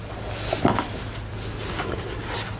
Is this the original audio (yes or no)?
yes